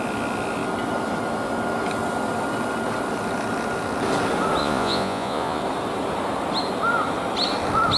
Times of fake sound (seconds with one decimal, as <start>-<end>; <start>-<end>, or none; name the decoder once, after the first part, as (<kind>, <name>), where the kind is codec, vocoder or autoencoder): 4.6-5.6 (vocoder, Vocos)